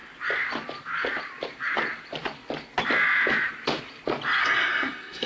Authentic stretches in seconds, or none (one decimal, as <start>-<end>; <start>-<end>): 0.0-4.4